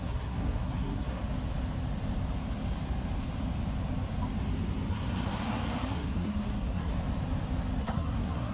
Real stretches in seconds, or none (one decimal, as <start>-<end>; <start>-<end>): 1.2-4.9; 6.9-7.8